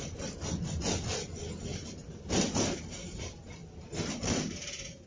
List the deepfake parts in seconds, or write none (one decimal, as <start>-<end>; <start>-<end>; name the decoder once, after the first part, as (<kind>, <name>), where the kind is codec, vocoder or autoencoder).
none